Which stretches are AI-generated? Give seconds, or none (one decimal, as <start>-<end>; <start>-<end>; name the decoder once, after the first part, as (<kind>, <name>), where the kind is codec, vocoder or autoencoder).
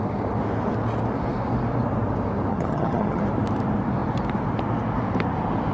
2.5-3.2 (vocoder, HiFi-GAN)